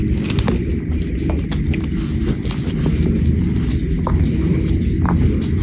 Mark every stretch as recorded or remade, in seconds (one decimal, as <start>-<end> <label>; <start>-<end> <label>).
0.0-5.6 recorded